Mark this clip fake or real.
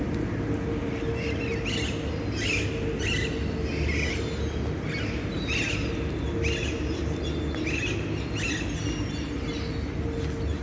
real